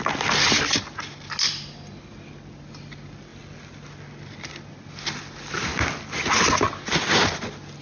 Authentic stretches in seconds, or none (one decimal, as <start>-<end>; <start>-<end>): 0.0-7.8